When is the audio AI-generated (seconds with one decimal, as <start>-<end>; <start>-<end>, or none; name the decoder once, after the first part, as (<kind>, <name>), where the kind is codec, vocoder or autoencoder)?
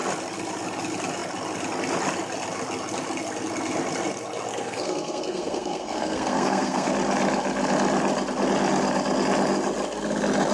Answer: 4.5-6.9 (codec, SNAC)